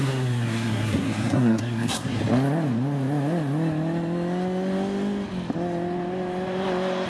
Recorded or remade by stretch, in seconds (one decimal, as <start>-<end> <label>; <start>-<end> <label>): 0.0-2.2 remade; 2.2-7.1 recorded